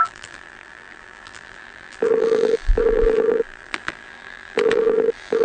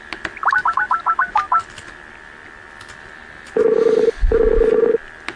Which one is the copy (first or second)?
first